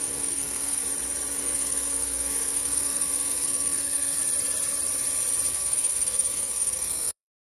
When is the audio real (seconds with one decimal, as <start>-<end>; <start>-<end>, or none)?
0.8-1.3; 4.2-5.5